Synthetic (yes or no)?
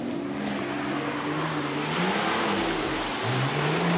no